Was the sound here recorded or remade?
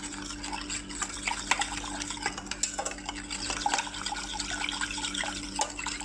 recorded